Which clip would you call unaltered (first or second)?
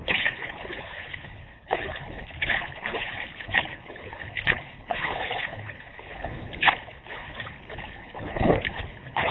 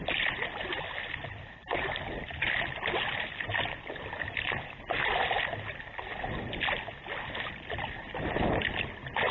second